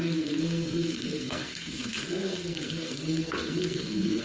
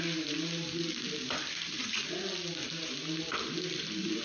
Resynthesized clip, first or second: first